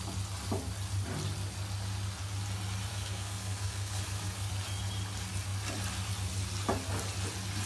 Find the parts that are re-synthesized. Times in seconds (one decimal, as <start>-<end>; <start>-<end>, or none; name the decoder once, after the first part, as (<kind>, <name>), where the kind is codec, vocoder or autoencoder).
2.9-4.5 (codec, SNAC)